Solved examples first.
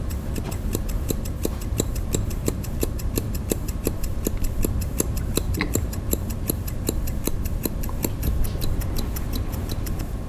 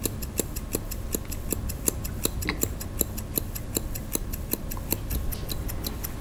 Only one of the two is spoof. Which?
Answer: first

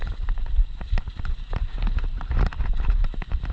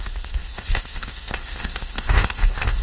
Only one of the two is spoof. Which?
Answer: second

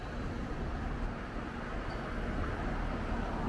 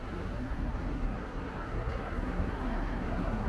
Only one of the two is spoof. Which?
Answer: second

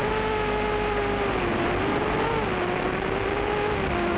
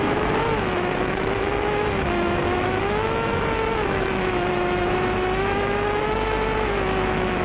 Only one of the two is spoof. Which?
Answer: second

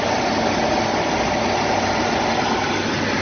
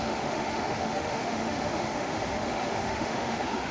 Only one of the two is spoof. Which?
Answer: second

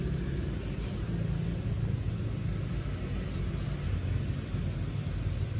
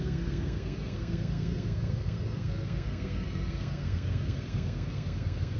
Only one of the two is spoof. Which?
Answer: second